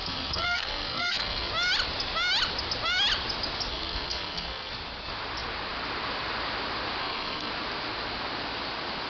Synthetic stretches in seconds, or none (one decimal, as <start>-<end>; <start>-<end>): 0.0-1.5; 3.7-4.7; 7.0-7.5